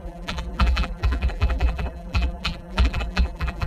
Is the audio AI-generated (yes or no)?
yes